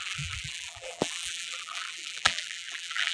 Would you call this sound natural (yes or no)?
no